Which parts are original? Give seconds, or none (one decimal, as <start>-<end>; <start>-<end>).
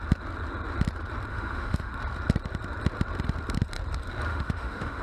0.0-1.3; 1.9-4.3